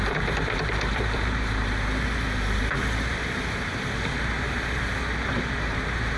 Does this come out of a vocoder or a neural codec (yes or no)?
yes